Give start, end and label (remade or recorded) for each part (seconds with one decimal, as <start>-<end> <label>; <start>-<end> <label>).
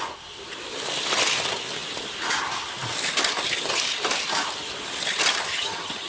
0.0-5.5 recorded; 5.5-6.1 remade